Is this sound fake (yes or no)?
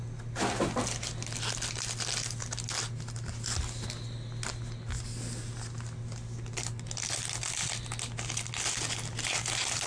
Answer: no